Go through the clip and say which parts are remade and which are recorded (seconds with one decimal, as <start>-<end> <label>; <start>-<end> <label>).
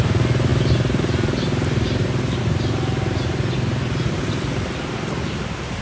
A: 0.0-5.8 recorded